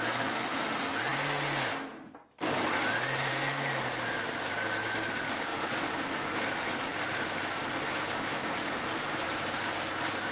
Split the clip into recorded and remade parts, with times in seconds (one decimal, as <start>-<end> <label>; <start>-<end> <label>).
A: 0.0-6.9 recorded; 6.9-9.7 remade; 9.7-10.3 recorded